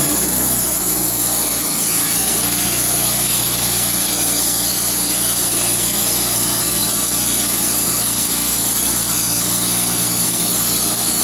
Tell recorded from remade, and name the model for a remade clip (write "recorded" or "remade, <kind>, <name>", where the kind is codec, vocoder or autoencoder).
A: remade, codec, SNAC